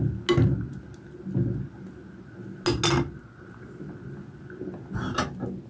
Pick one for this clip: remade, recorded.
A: recorded